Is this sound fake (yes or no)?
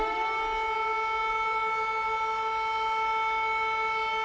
no